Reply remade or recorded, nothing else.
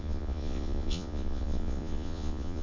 remade